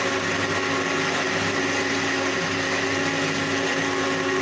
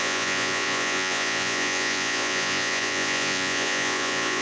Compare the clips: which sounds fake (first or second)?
second